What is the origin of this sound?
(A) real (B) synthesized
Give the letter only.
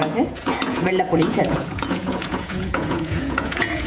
B